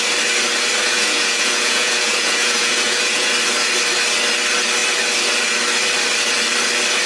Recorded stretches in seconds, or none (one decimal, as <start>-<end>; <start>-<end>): 0.0-0.8; 3.3-7.1